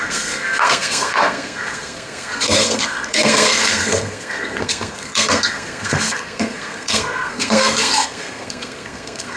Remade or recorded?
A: remade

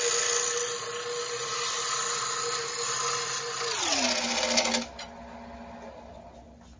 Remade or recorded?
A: recorded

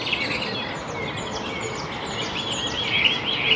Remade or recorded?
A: recorded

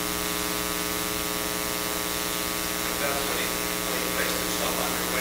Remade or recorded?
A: recorded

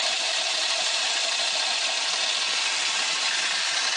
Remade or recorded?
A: recorded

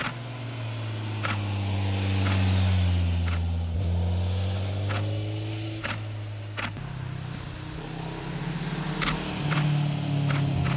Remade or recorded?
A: recorded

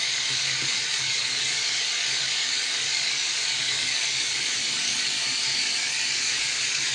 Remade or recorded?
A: remade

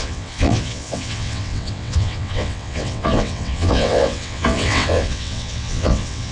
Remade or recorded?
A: remade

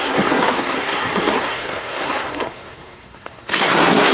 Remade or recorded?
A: remade